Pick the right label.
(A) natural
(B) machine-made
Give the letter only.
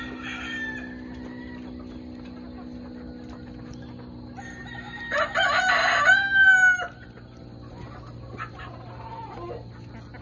A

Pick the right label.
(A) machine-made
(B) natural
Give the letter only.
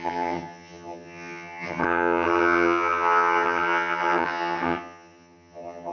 A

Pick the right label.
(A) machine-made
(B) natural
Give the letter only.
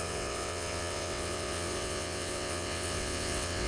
A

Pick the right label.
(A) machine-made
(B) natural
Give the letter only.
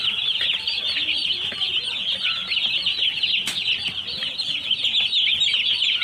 B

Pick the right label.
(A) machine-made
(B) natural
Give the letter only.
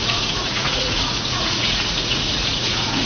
A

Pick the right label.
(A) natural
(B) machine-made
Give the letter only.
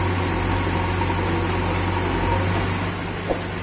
A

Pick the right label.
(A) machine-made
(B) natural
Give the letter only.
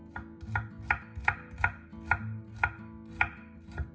B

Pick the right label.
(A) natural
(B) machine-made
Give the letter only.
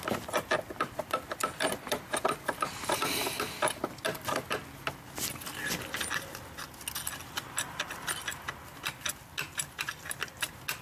A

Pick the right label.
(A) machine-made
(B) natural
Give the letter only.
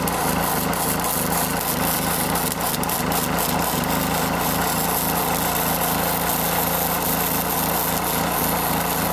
B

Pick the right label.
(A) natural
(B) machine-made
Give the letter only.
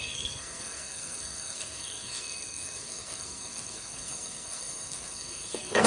B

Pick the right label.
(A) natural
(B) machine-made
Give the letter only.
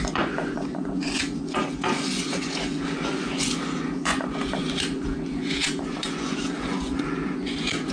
B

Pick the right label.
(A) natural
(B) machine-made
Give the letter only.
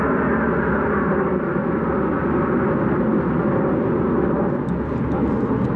A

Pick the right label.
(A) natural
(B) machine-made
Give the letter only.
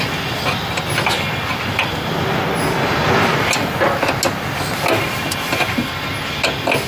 A